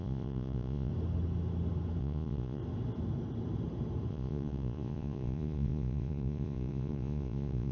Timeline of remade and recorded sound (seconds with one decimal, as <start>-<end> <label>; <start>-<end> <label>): 0.0-0.9 remade; 0.9-2.0 recorded; 2.0-2.6 remade; 2.6-4.1 recorded; 4.1-7.7 remade